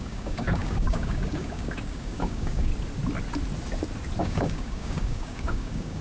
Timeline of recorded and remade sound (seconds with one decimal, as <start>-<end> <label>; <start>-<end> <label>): 0.0-2.7 remade; 2.7-4.2 recorded; 4.2-6.0 remade

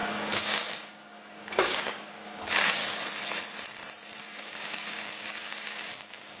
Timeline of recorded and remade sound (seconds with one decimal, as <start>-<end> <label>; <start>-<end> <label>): 0.0-2.8 remade; 2.8-4.2 recorded; 4.2-6.4 remade

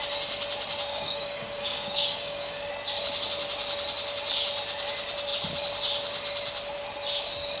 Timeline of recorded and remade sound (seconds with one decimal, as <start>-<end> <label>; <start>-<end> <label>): 0.0-0.9 recorded; 0.9-2.7 remade; 2.7-7.6 recorded